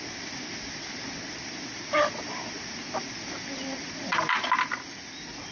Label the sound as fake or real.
fake